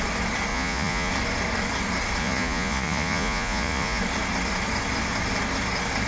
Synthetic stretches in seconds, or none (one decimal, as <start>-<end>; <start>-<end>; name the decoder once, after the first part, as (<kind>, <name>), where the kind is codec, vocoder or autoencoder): 0.5-1.1 (vocoder, Vocos); 2.2-4.0